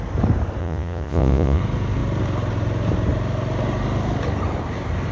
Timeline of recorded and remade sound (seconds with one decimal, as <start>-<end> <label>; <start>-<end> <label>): 0.0-0.6 recorded; 0.6-1.6 remade; 1.6-5.1 recorded